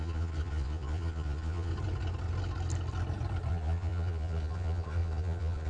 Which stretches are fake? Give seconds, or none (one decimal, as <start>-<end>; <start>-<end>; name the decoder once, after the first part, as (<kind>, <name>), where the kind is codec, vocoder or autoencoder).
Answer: 0.0-1.7 (vocoder, Vocos); 3.5-5.7